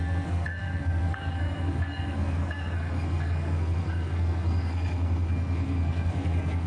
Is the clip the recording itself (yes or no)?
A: no